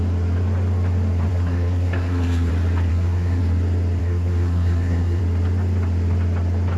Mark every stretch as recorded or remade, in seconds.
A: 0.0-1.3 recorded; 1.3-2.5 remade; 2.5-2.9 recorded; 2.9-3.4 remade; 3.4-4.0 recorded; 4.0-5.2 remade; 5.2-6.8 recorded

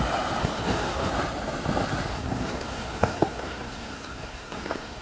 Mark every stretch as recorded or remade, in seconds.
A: 0.0-0.4 recorded; 0.4-1.1 remade; 1.1-2.1 recorded; 2.1-5.0 remade

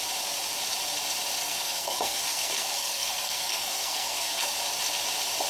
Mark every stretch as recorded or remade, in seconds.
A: 0.0-1.4 recorded; 1.4-4.5 remade; 4.5-5.5 recorded

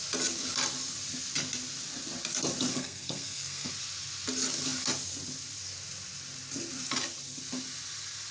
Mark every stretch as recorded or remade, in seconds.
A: 0.0-2.7 recorded; 2.7-3.7 remade; 3.7-8.3 recorded

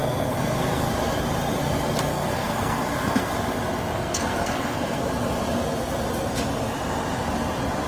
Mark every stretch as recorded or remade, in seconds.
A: 0.0-0.9 remade; 0.9-2.1 recorded; 2.1-3.3 remade; 3.3-3.9 recorded; 3.9-5.0 remade; 5.0-7.9 recorded

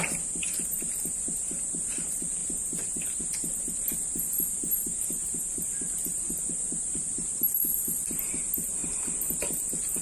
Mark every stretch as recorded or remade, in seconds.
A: 0.0-10.0 recorded